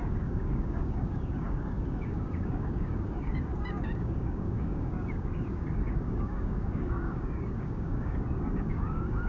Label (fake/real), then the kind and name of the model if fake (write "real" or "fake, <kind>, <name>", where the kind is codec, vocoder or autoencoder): fake, codec, DAC